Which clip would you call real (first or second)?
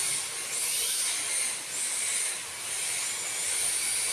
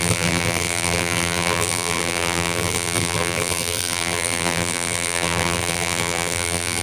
first